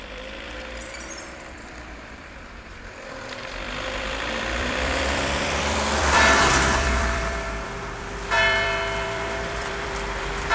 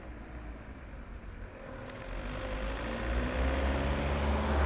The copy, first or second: first